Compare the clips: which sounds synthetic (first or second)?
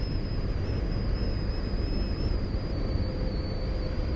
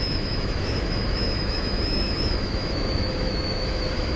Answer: second